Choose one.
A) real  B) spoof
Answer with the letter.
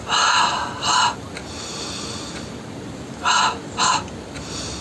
A